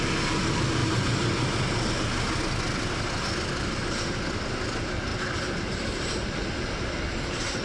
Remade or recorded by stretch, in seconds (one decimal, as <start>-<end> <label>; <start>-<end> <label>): 0.0-7.6 recorded